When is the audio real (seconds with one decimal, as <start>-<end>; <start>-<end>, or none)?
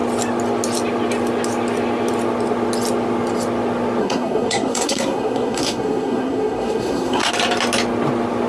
0.0-4.0; 7.3-8.5